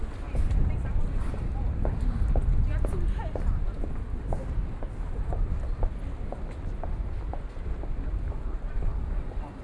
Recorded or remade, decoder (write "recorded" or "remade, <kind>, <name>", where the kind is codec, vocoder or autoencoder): recorded